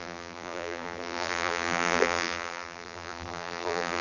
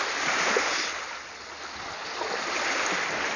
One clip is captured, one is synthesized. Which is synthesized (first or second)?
first